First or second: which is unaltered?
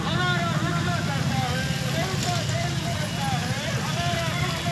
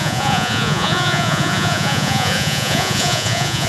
first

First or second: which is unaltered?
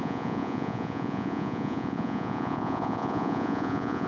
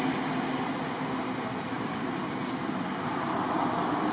second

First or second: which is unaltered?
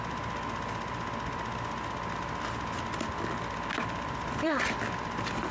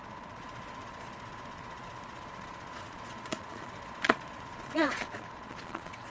first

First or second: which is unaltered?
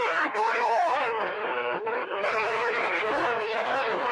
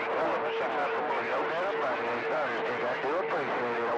second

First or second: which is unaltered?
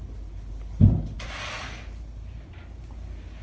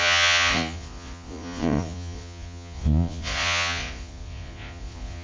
first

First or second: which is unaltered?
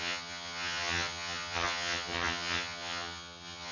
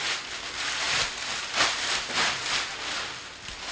second